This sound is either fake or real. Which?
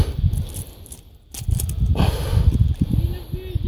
real